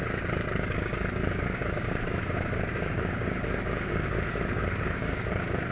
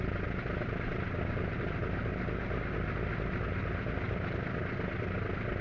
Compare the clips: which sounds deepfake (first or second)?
first